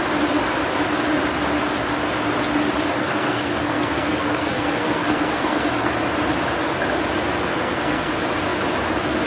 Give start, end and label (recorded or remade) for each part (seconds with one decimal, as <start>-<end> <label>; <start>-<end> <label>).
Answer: 0.0-3.0 recorded; 3.0-5.9 remade; 5.9-7.5 recorded; 7.5-8.1 remade; 8.1-9.3 recorded